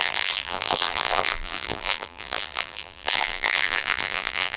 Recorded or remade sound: remade